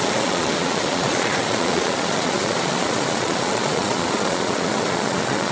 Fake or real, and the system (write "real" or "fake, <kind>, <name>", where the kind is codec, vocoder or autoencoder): fake, vocoder, Vocos